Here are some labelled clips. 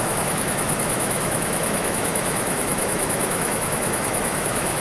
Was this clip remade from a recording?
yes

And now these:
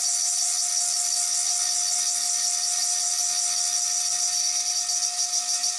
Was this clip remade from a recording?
no